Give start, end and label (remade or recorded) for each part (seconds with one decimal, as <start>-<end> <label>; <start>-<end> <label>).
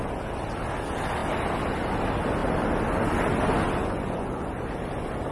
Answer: 0.0-3.8 recorded; 3.8-4.5 remade; 4.5-5.3 recorded